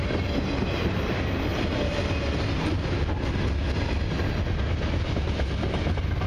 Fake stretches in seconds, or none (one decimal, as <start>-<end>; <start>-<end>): none